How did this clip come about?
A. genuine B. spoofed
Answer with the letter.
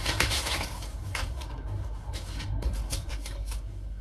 B